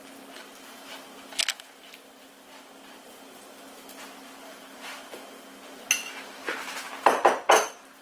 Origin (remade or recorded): recorded